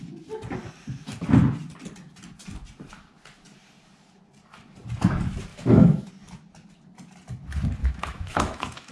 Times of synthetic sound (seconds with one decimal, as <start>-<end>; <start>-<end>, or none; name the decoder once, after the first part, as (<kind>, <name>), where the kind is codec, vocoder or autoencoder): 5.5-6.1 (autoencoder, DAC-VAE); 7.8-8.9